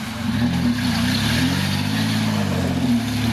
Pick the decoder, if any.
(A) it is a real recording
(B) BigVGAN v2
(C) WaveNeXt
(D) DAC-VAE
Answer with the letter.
A